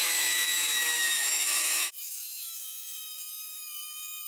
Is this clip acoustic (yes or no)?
no